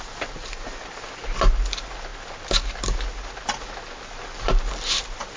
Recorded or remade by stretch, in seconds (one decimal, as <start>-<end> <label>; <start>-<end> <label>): 0.0-5.4 recorded